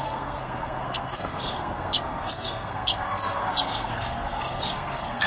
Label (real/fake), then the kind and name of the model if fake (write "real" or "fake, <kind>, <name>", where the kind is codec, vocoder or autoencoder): fake, codec, SNAC